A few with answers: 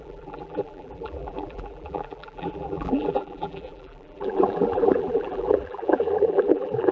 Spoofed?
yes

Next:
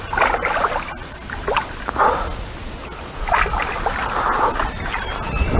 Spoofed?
no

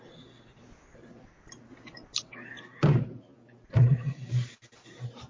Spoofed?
no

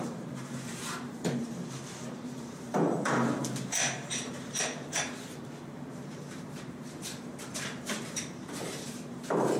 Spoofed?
yes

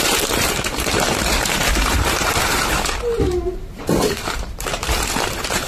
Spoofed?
yes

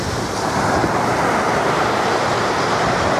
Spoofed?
yes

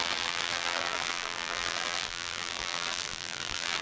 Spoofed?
yes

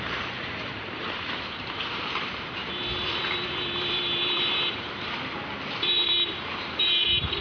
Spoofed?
yes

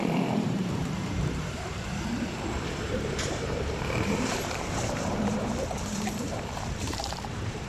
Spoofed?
yes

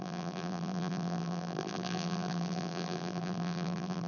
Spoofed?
yes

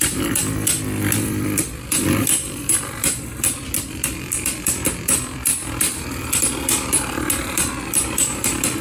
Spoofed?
yes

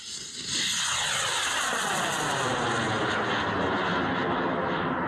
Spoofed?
no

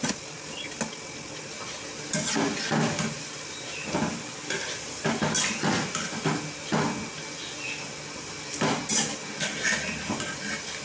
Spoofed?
no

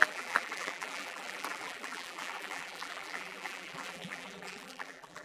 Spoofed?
yes